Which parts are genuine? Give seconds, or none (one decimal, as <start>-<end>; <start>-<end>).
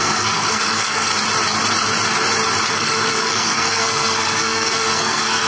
1.1-2.7